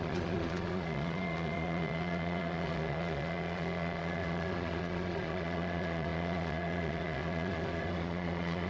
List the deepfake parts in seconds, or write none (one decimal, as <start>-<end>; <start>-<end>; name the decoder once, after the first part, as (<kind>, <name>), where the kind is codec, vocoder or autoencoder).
0.0-8.7 (vocoder, Vocos)